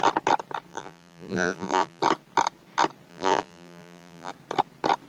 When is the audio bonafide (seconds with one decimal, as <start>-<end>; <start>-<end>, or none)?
0.0-0.7; 2.0-3.1; 4.3-5.1